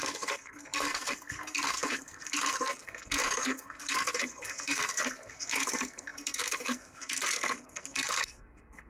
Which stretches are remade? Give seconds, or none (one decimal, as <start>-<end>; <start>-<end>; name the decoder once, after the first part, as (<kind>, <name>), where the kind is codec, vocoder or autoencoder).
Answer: 0.0-8.9 (codec, SNAC)